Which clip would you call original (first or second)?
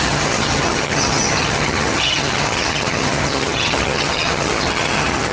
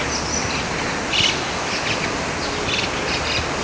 second